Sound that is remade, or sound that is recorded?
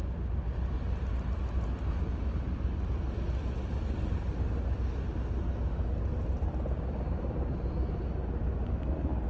recorded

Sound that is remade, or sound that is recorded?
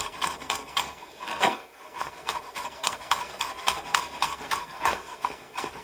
remade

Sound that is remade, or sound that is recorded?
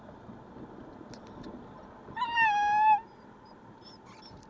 recorded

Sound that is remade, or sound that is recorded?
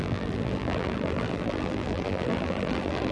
remade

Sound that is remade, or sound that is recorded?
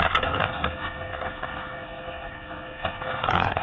remade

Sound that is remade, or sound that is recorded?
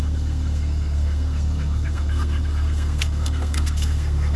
remade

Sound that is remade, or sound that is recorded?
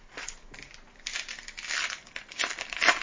recorded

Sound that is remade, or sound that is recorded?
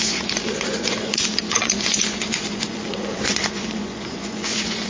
remade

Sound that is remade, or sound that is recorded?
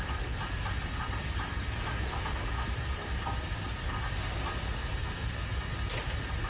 recorded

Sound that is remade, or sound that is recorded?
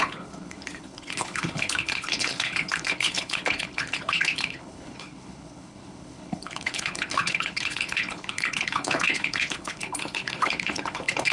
remade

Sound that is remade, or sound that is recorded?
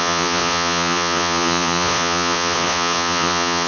remade